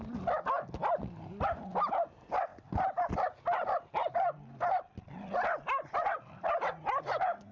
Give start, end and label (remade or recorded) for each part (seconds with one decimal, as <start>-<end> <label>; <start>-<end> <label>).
0.0-7.5 recorded